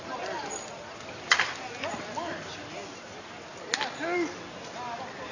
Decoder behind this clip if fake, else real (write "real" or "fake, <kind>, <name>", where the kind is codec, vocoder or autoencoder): real